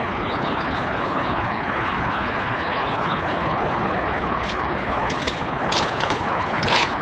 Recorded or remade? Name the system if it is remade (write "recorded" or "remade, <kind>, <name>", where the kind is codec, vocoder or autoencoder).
remade, codec, HILCodec